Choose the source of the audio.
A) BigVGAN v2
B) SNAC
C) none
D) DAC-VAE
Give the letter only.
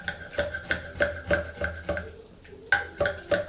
C